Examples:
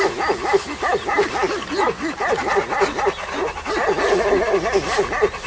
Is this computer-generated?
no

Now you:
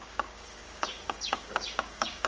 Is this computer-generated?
yes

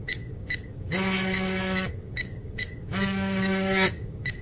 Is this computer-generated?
yes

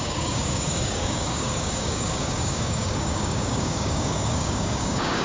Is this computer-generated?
yes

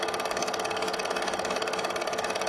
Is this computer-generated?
yes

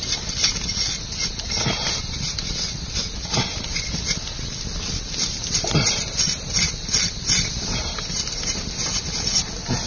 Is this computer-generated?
no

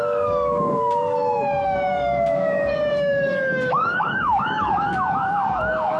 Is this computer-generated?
yes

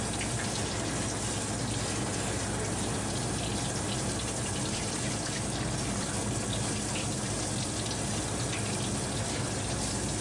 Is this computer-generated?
no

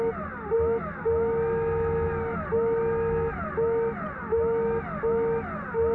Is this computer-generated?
no